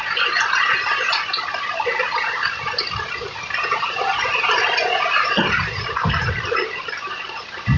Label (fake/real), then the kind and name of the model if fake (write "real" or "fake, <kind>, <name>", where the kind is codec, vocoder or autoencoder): real